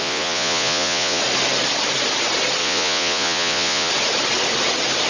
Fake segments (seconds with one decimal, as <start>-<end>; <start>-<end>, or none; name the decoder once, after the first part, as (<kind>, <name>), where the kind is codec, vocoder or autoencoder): 0.0-1.2 (vocoder, Vocos); 2.6-3.9